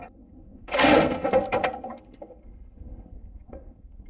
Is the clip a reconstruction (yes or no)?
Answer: yes